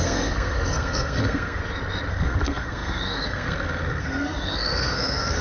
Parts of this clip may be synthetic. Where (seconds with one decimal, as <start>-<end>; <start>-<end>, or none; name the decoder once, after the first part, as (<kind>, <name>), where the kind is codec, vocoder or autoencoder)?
0.0-1.6 (codec, SNAC); 2.1-5.4